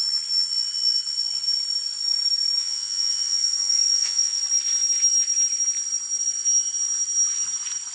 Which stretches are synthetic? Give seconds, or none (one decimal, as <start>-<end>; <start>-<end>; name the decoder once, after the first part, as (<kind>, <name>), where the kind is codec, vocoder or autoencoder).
2.6-4.4 (vocoder, Vocos)